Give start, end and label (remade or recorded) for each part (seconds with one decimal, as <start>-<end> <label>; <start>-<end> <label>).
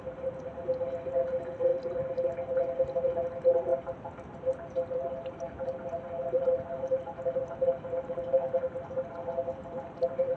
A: 0.0-10.4 recorded